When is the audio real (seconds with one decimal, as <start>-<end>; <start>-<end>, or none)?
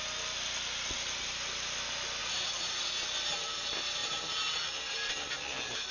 0.0-2.2; 2.9-5.9